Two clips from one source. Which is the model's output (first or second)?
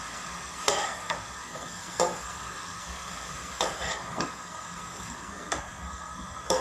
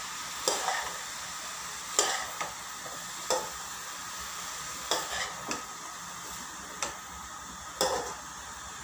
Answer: first